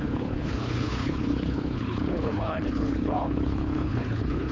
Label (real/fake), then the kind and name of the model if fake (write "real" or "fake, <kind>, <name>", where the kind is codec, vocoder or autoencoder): fake, codec, HILCodec